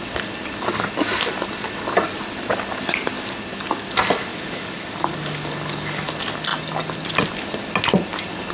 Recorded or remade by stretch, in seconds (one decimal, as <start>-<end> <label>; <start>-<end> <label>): 0.0-4.3 recorded; 4.3-6.1 remade; 6.1-8.5 recorded